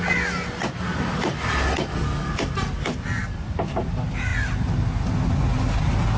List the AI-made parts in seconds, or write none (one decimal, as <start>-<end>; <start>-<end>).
none